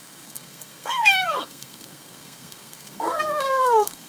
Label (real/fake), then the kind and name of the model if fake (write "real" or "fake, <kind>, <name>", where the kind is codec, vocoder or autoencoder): fake, codec, SNAC